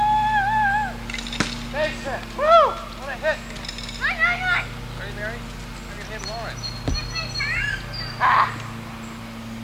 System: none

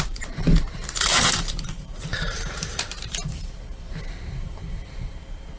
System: vocoder, BigVGAN v2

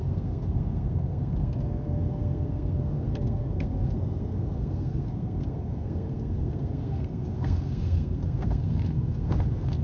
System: codec, SNAC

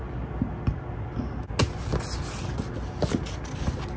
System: none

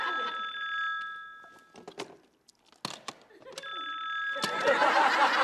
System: none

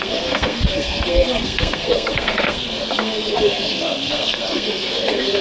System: codec, SNAC